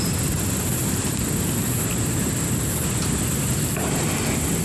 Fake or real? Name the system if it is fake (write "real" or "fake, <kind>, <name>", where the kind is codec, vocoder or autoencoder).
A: real